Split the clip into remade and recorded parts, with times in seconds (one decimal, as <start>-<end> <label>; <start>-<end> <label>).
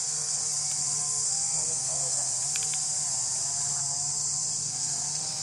0.0-0.4 remade; 0.4-1.0 recorded; 1.0-2.3 remade; 2.3-4.6 recorded; 4.6-5.4 remade